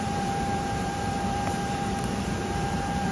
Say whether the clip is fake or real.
fake